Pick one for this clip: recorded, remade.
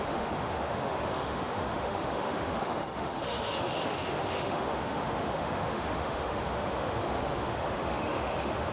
remade